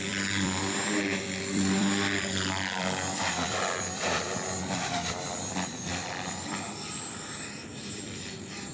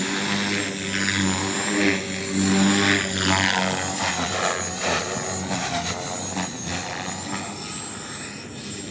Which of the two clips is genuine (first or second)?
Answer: second